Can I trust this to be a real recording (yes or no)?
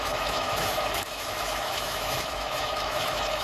no